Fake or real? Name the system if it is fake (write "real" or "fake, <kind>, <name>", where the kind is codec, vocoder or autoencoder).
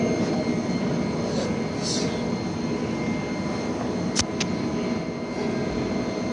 real